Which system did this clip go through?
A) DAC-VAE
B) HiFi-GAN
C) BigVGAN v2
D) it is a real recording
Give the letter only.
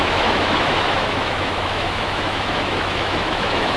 A